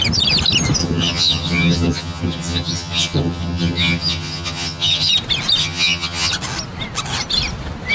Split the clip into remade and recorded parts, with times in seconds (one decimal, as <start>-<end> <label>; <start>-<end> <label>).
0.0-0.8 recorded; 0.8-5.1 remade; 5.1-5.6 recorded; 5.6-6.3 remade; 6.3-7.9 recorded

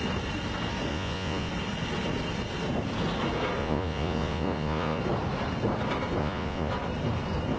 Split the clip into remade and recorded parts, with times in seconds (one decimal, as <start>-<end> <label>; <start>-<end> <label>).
0.0-0.9 recorded; 0.9-1.5 remade; 1.5-3.6 recorded; 3.6-5.0 remade; 5.0-6.2 recorded; 6.2-6.7 remade; 6.7-7.6 recorded

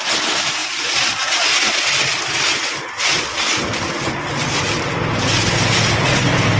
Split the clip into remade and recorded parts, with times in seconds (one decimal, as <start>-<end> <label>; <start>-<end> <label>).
0.0-6.6 recorded